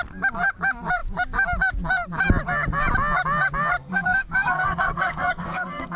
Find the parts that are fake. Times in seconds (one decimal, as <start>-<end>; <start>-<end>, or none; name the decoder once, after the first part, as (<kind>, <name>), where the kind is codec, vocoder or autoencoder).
3.8-6.0 (codec, SNAC)